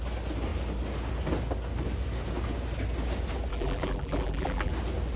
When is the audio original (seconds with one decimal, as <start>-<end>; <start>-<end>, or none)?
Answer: 0.0-3.5; 4.7-5.2